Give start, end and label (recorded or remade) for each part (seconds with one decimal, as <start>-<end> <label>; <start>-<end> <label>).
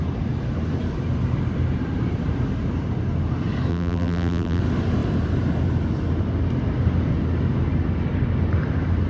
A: 0.0-3.7 recorded; 3.7-4.6 remade; 4.6-9.1 recorded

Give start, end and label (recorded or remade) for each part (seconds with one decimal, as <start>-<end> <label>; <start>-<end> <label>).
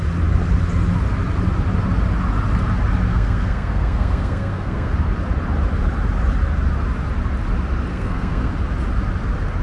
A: 0.0-3.1 recorded; 3.1-4.9 remade; 4.9-7.9 recorded; 7.9-8.5 remade; 8.5-9.6 recorded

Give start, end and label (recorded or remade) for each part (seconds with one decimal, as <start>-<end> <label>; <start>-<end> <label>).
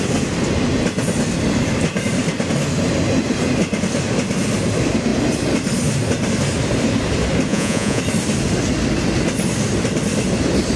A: 0.0-7.5 recorded; 7.5-8.0 remade; 8.0-10.8 recorded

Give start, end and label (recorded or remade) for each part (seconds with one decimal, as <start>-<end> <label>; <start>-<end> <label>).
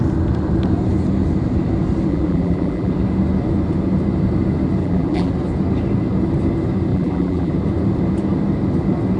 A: 0.0-2.1 recorded; 2.1-2.9 remade; 2.9-4.8 recorded; 4.8-5.3 remade; 5.3-6.9 recorded; 6.9-7.5 remade; 7.5-9.2 recorded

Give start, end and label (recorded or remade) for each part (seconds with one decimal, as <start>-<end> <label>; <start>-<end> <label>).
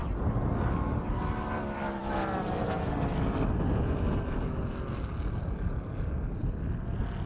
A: 0.0-7.3 recorded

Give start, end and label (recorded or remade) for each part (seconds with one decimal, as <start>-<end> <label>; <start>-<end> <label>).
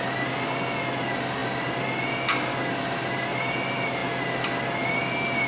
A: 0.0-5.5 recorded